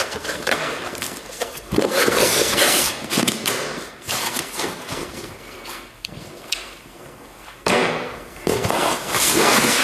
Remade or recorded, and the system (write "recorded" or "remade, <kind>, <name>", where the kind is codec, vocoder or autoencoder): remade, codec, SNAC